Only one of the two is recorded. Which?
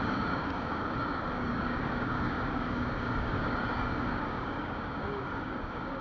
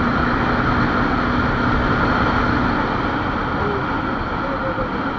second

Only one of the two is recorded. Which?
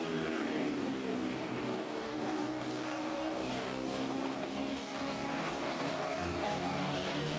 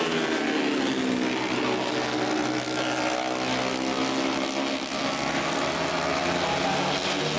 second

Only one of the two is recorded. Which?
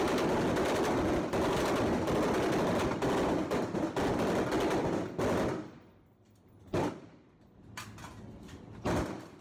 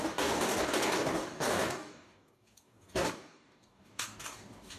first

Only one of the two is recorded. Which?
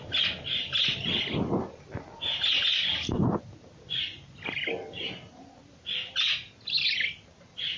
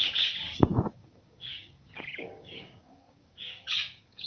first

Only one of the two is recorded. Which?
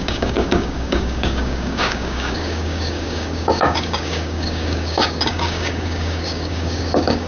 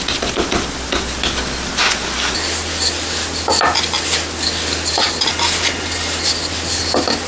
second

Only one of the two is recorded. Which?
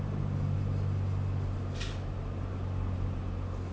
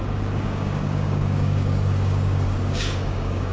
first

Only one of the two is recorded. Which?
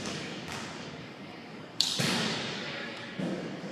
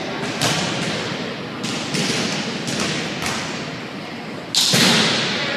second